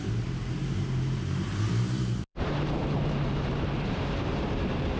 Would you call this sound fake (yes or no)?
yes